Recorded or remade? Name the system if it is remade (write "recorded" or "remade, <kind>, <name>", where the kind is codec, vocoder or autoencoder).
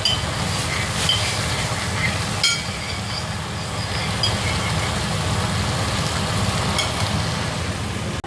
recorded